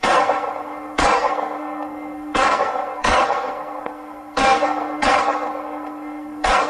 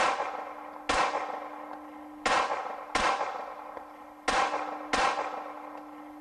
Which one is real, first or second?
second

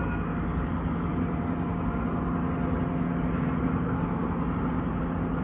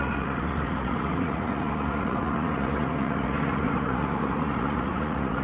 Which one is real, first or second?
first